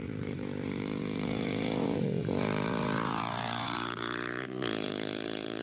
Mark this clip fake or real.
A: fake